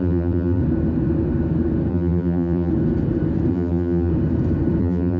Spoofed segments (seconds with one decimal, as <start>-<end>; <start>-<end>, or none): 0.0-0.6; 1.9-2.7; 3.5-4.1; 4.8-5.2